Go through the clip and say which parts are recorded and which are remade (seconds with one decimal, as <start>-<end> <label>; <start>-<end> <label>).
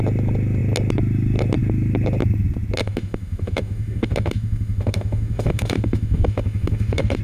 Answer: 0.0-2.8 recorded; 2.8-7.2 remade